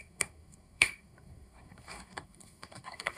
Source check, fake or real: fake